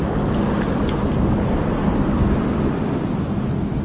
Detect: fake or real real